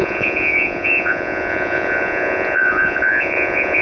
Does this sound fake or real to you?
fake